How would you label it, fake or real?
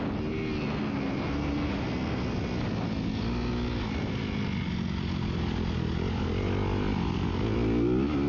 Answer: real